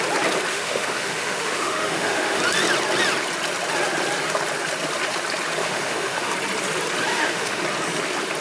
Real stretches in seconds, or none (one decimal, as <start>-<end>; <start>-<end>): 0.0-0.5; 2.4-5.6; 6.3-7.1; 7.6-8.4